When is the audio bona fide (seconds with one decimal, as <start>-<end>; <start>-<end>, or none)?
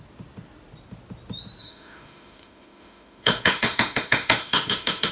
0.0-1.6